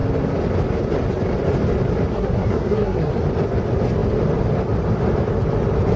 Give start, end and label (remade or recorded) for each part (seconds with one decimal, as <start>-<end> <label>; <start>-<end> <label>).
0.0-2.1 recorded; 2.1-3.1 remade; 3.1-6.0 recorded